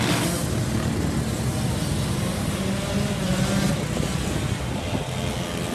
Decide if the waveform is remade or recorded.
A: recorded